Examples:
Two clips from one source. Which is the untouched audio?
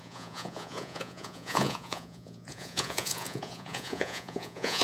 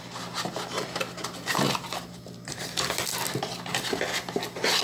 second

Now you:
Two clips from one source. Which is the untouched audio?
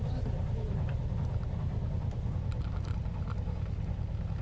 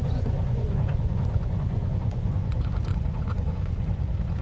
first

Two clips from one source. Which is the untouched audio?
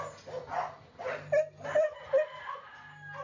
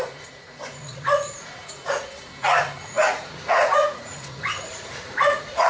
first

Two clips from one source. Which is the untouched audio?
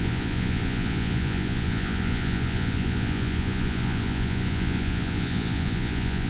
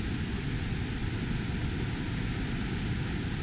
second